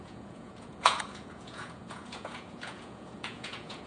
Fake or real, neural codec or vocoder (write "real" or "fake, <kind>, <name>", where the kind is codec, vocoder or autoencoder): fake, vocoder, Vocos